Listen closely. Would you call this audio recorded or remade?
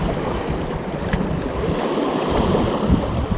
recorded